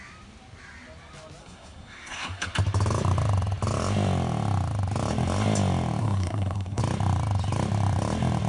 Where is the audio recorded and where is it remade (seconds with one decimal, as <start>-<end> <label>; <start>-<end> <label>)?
0.0-1.4 recorded; 1.4-2.5 remade; 2.5-6.0 recorded; 6.0-6.8 remade; 6.8-8.5 recorded